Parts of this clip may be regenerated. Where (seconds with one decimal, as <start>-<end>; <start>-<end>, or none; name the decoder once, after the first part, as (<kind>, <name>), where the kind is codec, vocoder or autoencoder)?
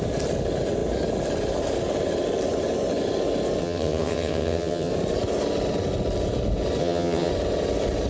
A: 3.6-4.9 (vocoder, HiFi-GAN); 6.8-7.3